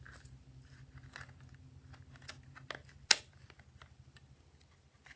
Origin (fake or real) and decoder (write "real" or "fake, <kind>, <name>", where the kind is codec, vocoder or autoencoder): real